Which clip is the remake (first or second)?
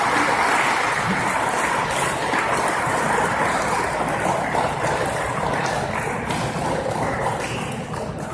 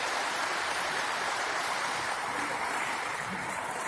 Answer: second